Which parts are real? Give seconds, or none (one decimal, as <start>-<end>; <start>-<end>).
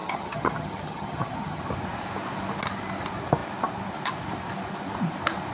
1.6-5.5